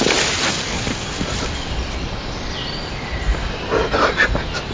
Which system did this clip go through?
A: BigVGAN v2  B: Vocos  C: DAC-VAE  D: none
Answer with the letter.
D